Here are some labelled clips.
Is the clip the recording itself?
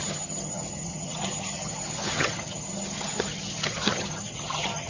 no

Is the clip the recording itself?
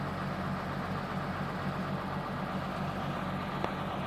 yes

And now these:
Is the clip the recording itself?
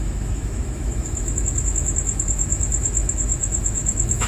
no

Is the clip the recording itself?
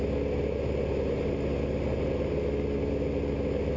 yes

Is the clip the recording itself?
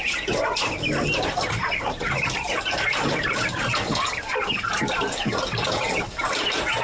yes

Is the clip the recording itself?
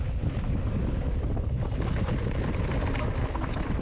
yes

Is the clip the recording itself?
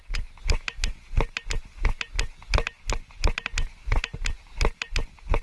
yes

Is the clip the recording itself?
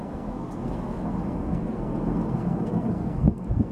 no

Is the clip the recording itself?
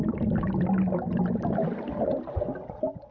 yes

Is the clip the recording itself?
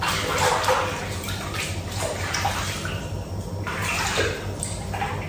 yes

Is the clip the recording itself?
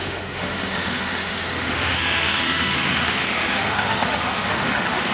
no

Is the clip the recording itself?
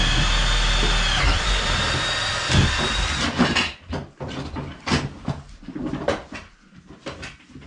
yes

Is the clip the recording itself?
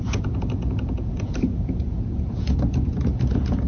no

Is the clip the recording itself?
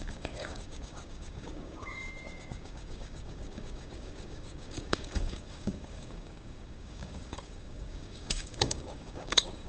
no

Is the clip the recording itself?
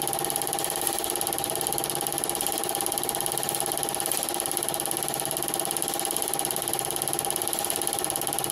no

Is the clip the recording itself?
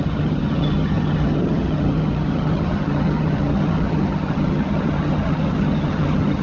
no